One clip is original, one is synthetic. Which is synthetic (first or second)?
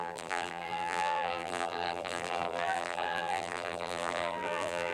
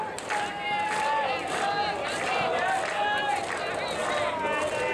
first